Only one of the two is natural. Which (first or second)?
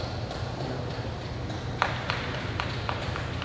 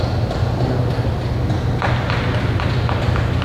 second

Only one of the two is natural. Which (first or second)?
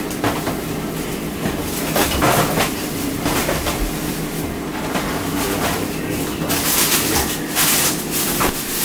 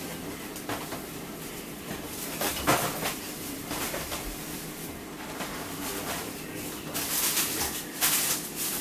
first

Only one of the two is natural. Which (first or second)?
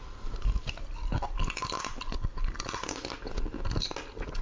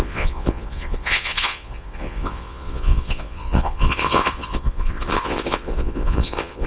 first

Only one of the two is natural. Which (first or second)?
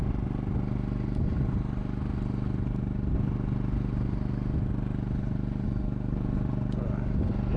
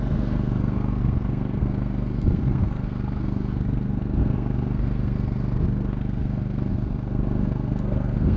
first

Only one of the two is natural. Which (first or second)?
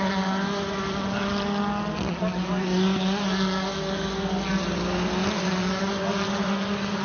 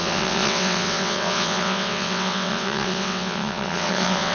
first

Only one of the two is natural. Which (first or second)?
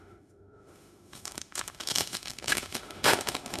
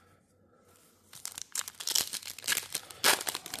second